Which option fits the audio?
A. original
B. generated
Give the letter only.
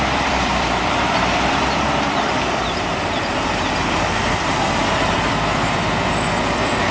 B